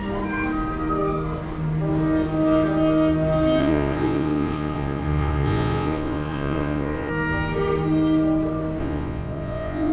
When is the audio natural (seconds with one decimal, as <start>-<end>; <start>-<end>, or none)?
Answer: 0.0-3.6; 7.1-8.8

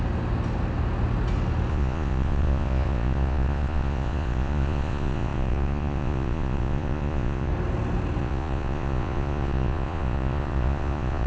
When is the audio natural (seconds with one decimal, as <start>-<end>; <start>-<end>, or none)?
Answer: 0.0-1.7; 7.5-8.2